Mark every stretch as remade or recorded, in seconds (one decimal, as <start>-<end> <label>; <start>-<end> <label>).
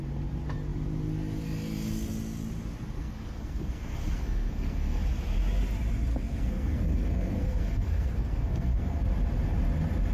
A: 0.0-3.0 recorded; 3.0-5.0 remade; 5.0-6.1 recorded; 6.1-9.0 remade; 9.0-10.1 recorded